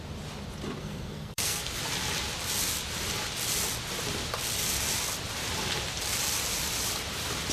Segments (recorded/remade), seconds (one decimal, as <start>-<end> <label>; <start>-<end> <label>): 0.0-0.8 recorded; 0.8-1.8 remade; 1.8-7.5 recorded

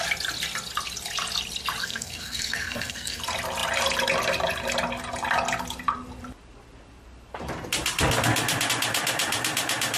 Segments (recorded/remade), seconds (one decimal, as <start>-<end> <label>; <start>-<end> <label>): 0.0-1.8 recorded; 1.8-3.2 remade; 3.2-10.0 recorded